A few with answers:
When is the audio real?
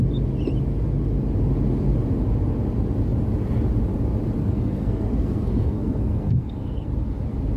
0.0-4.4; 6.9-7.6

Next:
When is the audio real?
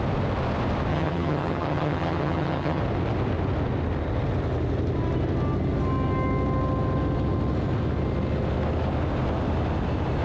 0.0-0.9; 2.8-10.2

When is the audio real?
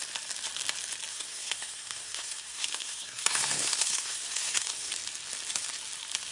0.0-1.1; 4.9-6.3